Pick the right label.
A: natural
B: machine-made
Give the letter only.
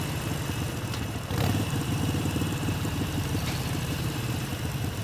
B